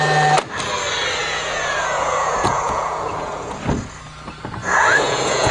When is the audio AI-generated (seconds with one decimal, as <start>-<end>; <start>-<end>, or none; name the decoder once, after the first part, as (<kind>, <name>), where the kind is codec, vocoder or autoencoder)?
1.2-3.6 (vocoder, Vocos); 4.6-5.5